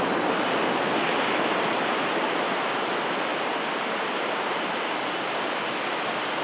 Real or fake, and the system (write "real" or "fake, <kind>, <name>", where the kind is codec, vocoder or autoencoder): real